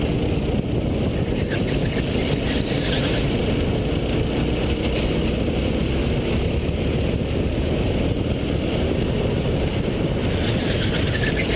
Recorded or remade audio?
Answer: recorded